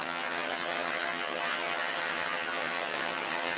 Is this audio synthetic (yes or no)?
yes